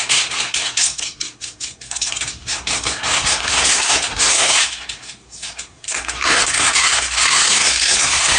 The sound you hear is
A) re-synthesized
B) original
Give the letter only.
A